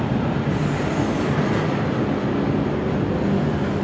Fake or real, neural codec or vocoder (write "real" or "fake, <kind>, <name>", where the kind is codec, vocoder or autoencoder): real